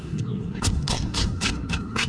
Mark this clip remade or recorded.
remade